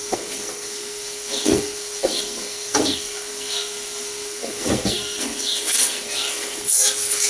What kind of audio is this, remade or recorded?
remade